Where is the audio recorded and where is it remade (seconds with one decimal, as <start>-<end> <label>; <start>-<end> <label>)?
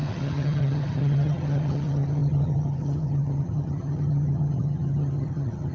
0.0-5.7 remade